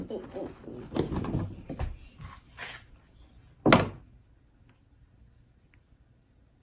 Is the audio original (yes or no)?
yes